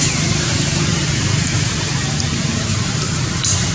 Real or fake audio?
fake